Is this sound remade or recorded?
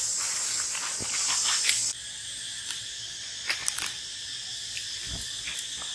recorded